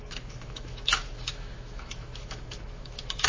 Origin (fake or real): fake